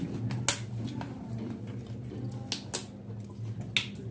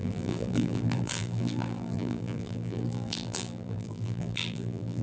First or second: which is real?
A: first